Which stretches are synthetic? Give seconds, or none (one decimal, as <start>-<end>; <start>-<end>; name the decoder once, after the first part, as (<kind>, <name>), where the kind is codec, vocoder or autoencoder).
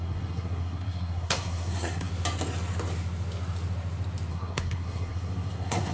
0.0-2.1 (codec, SNAC); 4.3-5.9